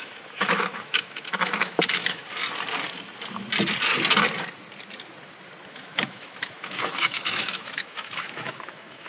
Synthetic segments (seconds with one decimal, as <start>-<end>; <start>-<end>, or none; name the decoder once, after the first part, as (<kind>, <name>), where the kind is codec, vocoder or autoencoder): 0.0-2.2 (autoencoder, DAC-VAE); 5.7-9.1